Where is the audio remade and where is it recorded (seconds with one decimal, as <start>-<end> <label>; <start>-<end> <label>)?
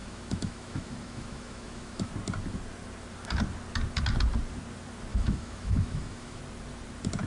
0.0-2.1 remade; 2.1-5.1 recorded; 5.1-6.4 remade; 6.4-7.3 recorded